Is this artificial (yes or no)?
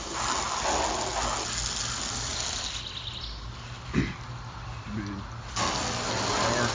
no